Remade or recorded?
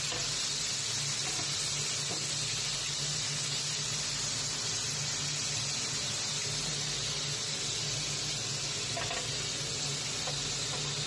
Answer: recorded